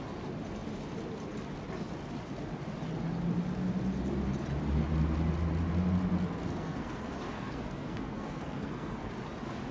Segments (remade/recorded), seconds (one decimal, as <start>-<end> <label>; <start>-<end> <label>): 0.0-6.4 recorded; 6.4-9.1 remade; 9.1-9.7 recorded